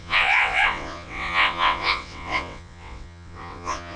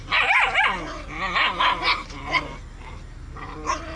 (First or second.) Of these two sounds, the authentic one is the second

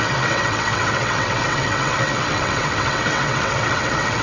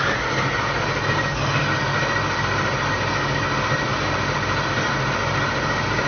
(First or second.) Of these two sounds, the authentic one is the second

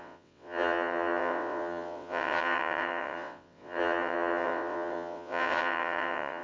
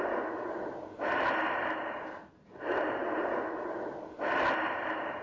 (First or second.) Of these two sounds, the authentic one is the second